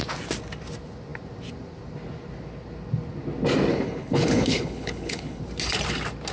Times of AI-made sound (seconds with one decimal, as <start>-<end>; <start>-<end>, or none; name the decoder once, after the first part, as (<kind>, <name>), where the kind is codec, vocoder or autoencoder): 3.7-5.4 (codec, HILCodec)